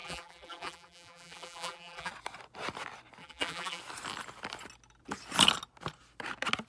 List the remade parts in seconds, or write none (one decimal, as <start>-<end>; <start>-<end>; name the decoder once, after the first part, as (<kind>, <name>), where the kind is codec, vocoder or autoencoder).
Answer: 0.0-2.1 (vocoder, BigVGAN v2); 3.2-3.8